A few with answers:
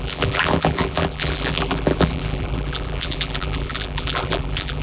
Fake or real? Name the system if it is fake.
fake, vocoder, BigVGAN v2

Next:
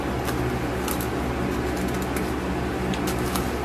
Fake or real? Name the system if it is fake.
real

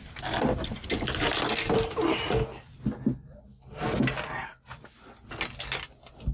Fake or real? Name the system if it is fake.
real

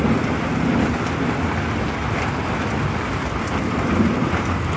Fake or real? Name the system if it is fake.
real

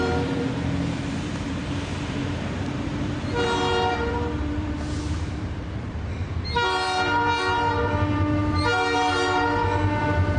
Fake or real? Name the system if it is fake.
fake, vocoder, BigVGAN v2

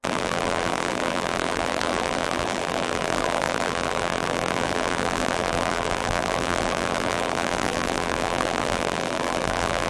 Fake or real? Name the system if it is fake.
fake, vocoder, BigVGAN v2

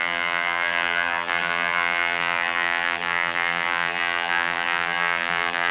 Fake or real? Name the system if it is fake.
fake, vocoder, BigVGAN v2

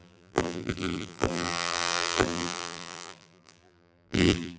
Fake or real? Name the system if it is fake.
fake, vocoder, BigVGAN v2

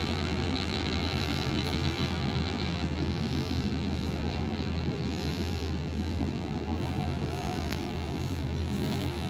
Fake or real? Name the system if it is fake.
fake, vocoder, BigVGAN v2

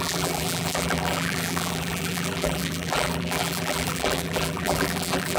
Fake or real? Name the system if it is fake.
fake, vocoder, BigVGAN v2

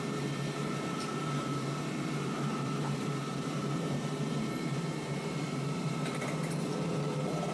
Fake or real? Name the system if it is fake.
fake, vocoder, BigVGAN v2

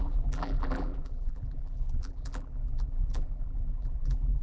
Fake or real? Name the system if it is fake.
fake, vocoder, BigVGAN v2